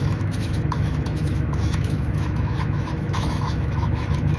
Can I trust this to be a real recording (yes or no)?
no